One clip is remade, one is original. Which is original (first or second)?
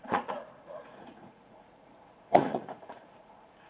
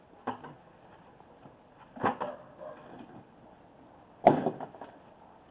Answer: second